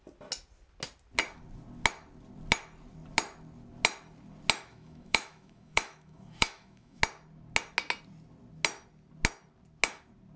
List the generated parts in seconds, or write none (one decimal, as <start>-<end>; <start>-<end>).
4.7-7.0